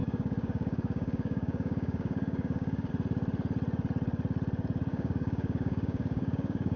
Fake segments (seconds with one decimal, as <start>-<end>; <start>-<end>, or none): 0.0-2.9; 4.9-6.8